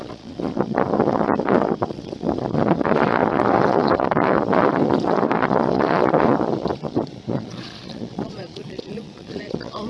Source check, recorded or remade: remade